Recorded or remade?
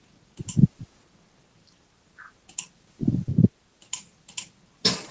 recorded